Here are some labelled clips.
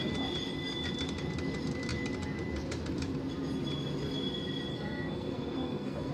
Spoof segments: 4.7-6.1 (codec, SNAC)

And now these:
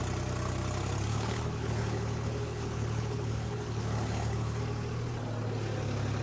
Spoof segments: 1.1-4.6 (codec, HILCodec)

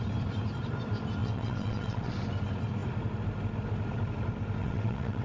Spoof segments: 1.2-2.1 (vocoder, WaveNeXt); 4.6-5.2

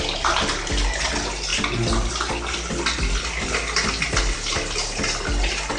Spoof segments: none